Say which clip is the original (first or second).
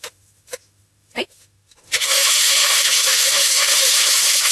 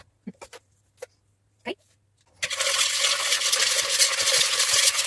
second